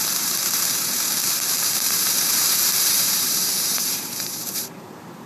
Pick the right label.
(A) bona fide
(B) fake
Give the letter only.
B